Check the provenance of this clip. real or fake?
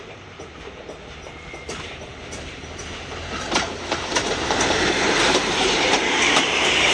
fake